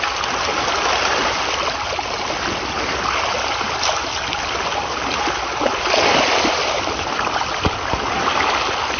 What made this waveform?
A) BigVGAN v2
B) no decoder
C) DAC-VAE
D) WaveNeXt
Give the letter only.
B